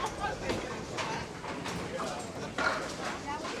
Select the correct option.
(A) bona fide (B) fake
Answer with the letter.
A